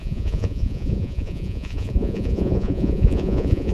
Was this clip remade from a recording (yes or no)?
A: yes